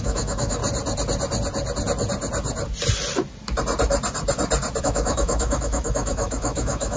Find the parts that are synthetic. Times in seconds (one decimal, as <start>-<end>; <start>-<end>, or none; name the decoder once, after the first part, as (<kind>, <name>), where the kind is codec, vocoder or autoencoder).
0.0-0.6 (autoencoder, DAC-VAE); 4.8-7.0